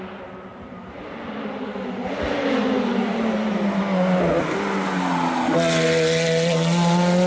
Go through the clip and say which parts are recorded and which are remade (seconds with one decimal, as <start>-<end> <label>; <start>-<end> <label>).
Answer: 0.0-0.5 recorded; 0.5-3.8 remade; 3.8-7.3 recorded